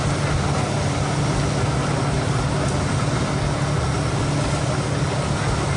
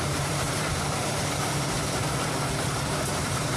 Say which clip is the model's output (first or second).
second